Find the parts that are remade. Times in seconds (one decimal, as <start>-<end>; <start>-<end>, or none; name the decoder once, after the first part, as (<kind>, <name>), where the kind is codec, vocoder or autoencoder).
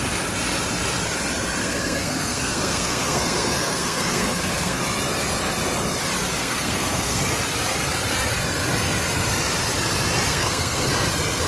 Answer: 1.6-4.8 (codec, SNAC); 6.4-7.2; 10.3-10.9